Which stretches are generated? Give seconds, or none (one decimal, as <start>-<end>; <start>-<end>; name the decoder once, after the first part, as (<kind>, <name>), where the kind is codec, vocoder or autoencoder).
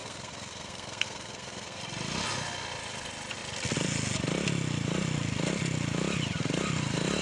0.0-1.8 (codec, SNAC)